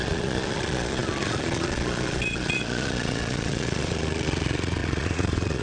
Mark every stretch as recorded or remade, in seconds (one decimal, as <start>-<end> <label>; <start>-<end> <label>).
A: 0.0-5.6 remade